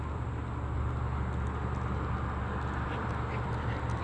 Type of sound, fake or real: real